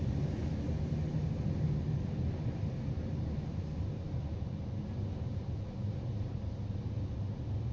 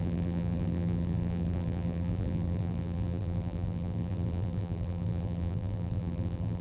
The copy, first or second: second